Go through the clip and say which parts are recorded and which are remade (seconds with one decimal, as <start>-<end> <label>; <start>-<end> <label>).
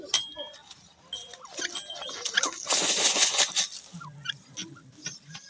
0.0-2.8 recorded; 2.8-3.4 remade; 3.4-5.5 recorded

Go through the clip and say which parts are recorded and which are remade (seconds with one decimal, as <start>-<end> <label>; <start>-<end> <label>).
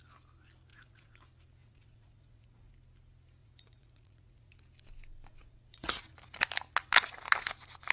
0.0-0.7 recorded; 0.7-1.2 remade; 1.2-1.6 recorded; 1.6-2.7 remade; 2.7-3.4 recorded; 3.4-4.5 remade; 4.5-5.3 recorded; 5.3-5.9 remade; 5.9-7.9 recorded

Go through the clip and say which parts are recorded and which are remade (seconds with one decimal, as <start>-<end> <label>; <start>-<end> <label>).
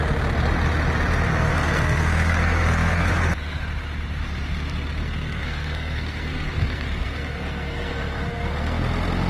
0.0-1.3 recorded; 1.3-3.1 remade; 3.1-5.0 recorded; 5.0-8.8 remade; 8.8-9.3 recorded